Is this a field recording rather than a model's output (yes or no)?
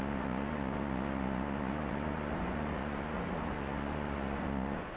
no